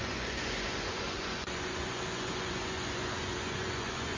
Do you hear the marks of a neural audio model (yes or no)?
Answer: yes